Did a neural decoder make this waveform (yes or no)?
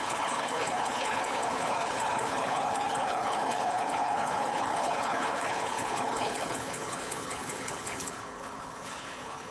yes